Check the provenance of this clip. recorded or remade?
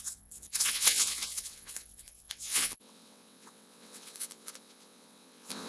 remade